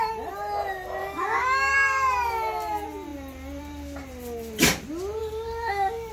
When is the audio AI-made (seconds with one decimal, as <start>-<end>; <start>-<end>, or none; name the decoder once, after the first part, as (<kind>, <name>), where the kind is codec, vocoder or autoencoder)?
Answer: 1.0-1.7 (codec, DAC); 5.2-6.1